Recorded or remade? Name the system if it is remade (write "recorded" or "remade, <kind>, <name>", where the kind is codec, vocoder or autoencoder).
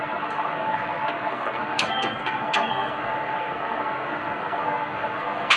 remade, codec, SNAC